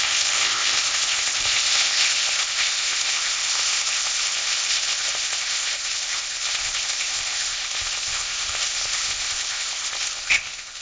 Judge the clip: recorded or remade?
remade